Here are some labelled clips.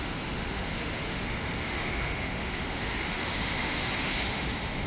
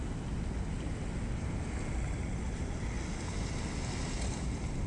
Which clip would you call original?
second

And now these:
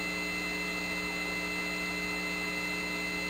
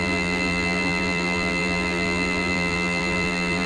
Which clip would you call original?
first